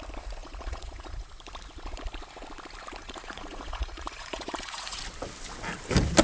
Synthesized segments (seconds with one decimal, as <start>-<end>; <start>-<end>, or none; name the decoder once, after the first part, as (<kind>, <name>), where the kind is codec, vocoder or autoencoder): 0.4-1.3 (vocoder, Vocos); 3.0-5.0